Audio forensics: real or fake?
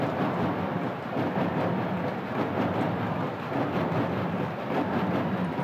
real